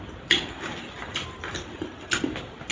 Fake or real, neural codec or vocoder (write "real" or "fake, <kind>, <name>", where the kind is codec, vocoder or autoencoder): real